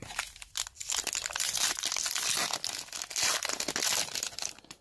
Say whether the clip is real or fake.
real